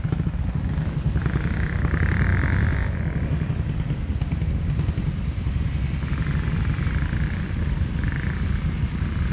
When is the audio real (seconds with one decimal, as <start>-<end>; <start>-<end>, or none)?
0.0-9.3